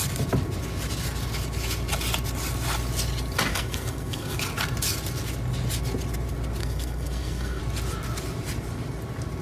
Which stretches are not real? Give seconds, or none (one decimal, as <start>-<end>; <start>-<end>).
3.5-4.4; 6.6-7.6